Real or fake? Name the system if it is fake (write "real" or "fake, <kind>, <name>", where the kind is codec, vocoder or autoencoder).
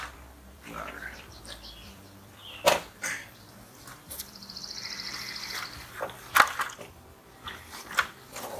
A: fake, vocoder, BigVGAN v2